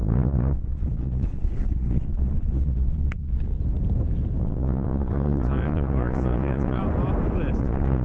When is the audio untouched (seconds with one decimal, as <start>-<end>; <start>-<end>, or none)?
3.5-4.4; 6.8-7.6